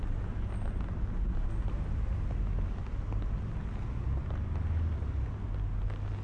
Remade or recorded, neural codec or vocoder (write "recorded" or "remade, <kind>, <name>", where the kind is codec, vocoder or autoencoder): recorded